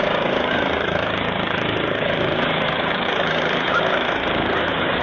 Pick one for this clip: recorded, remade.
remade